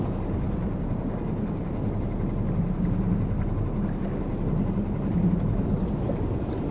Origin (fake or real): real